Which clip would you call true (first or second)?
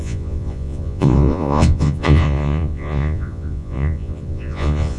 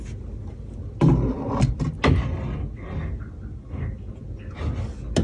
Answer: second